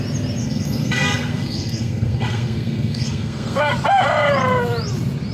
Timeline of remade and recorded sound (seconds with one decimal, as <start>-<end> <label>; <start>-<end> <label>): 0.0-0.4 recorded; 0.4-3.6 remade; 3.6-5.3 recorded